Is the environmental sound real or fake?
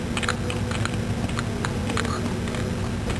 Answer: real